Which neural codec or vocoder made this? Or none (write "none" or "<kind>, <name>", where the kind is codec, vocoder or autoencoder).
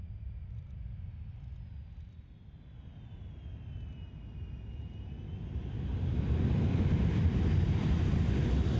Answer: none